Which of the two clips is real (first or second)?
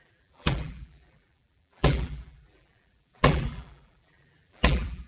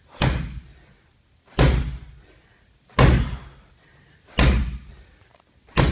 second